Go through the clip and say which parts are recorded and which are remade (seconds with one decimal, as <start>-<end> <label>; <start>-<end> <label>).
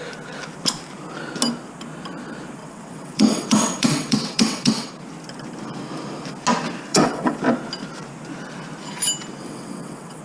0.0-2.6 recorded; 2.6-4.9 remade; 4.9-6.9 recorded; 6.9-7.4 remade; 7.4-9.4 recorded; 9.4-10.2 remade